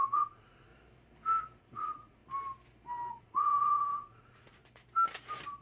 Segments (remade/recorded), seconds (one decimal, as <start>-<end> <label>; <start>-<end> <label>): 0.0-0.7 remade; 0.7-1.6 recorded; 1.6-2.2 remade; 2.2-3.2 recorded; 3.2-4.6 remade; 4.6-5.6 recorded